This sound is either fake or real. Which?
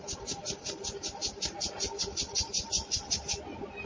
real